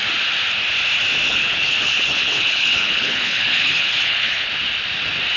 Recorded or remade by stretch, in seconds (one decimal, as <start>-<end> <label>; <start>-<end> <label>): 0.0-1.3 recorded; 1.3-4.5 remade; 4.5-5.4 recorded